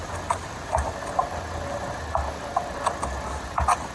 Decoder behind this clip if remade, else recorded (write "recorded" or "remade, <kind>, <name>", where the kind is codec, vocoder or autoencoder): recorded